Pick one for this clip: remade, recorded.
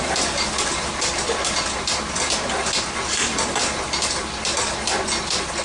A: recorded